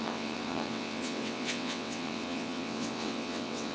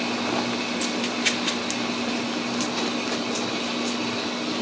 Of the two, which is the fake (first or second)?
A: first